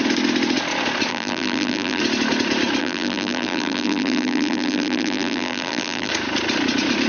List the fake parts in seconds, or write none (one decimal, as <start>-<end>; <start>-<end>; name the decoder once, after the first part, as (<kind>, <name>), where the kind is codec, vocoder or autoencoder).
1.1-2.0 (vocoder, BigVGAN v2); 2.8-6.1